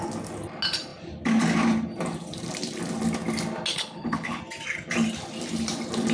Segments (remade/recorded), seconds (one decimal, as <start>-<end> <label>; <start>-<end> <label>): 0.0-3.7 recorded; 3.7-4.4 remade; 4.4-6.1 recorded